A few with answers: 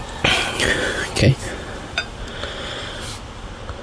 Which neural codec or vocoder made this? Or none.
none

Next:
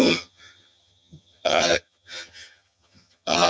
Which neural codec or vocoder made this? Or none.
vocoder, HiFi-GAN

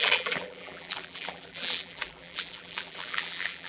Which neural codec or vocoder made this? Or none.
vocoder, BigVGAN v2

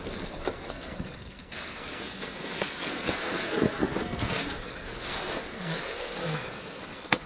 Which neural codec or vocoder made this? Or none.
codec, SNAC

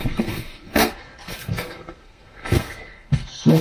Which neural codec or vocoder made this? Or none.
codec, SNAC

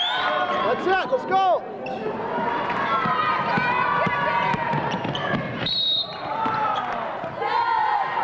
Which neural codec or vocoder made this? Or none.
none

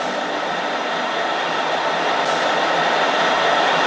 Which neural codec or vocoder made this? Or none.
none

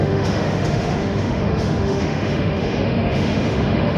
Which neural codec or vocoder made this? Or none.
autoencoder, DAC-VAE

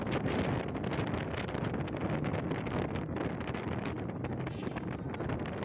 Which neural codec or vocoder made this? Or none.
none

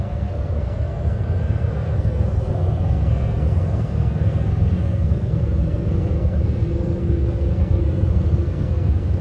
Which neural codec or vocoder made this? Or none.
codec, SNAC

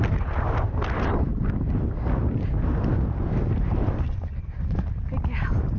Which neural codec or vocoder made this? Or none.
none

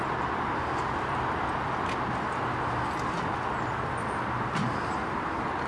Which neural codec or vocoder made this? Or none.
none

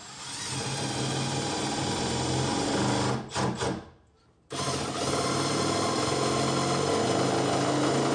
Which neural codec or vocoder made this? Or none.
none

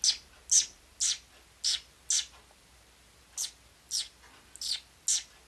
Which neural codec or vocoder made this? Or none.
none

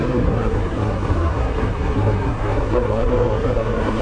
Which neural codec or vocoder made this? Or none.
codec, SNAC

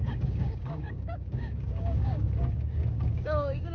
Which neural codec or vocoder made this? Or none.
codec, DAC